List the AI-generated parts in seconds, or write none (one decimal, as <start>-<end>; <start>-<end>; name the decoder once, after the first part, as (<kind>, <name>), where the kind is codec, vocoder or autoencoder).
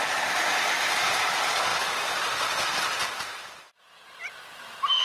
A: none